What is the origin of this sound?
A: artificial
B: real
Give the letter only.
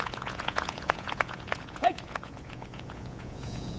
A